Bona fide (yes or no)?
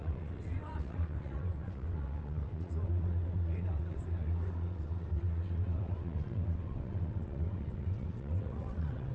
no